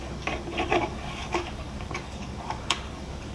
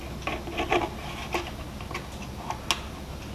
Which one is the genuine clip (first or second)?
second